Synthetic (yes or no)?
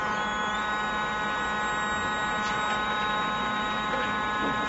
no